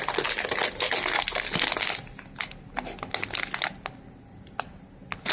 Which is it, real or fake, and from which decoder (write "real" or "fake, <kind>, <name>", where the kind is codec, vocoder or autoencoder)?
real